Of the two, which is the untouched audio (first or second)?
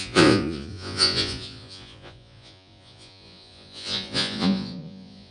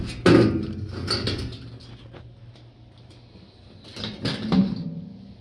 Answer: second